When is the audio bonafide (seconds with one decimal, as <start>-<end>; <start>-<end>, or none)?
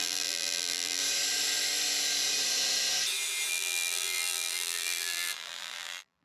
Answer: 1.0-3.5